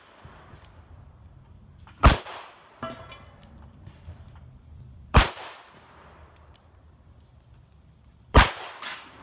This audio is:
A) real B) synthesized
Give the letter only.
B